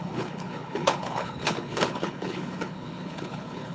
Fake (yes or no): yes